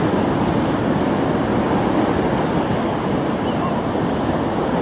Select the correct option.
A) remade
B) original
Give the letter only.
B